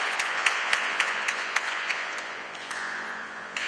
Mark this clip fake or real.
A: fake